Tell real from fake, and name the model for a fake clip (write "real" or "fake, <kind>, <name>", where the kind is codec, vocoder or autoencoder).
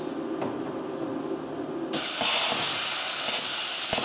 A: real